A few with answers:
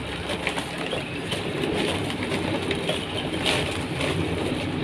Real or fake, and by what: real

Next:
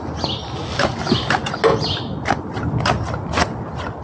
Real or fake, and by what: real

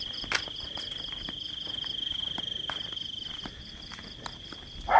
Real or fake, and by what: real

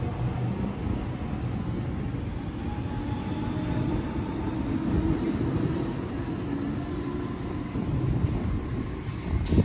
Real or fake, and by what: real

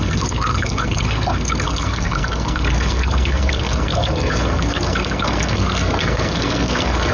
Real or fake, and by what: fake, codec, SNAC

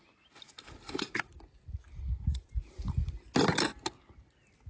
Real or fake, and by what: real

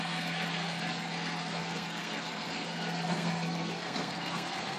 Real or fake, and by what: fake, codec, SNAC